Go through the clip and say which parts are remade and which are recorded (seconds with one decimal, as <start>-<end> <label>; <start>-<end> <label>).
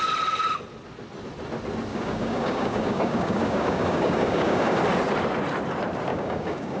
0.0-1.9 recorded; 1.9-4.8 remade; 4.8-6.1 recorded; 6.1-6.8 remade